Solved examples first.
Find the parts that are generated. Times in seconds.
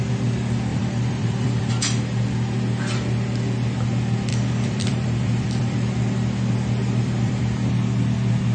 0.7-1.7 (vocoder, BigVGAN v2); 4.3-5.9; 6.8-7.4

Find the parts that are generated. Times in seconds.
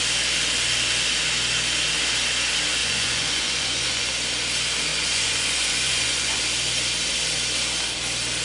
2.8-4.1 (vocoder, Vocos); 4.9-6.4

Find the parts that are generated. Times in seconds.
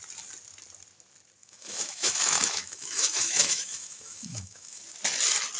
1.4-4.8 (autoencoder, DAC-VAE)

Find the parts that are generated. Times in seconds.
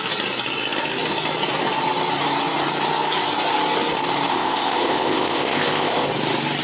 4.3-6.1 (codec, ZipCodec)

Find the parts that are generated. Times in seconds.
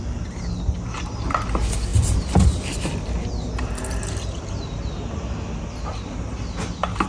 none